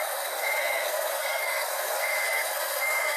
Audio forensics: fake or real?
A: fake